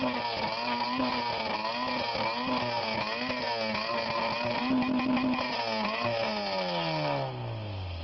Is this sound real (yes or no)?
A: yes